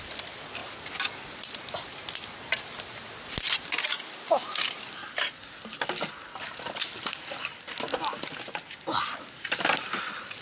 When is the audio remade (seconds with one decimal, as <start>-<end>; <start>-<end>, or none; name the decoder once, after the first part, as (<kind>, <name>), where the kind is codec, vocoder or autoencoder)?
none